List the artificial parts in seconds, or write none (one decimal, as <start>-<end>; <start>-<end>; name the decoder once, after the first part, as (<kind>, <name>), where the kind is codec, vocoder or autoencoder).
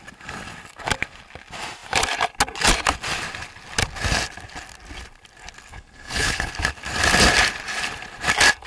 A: 5.7-6.5 (codec, HILCodec)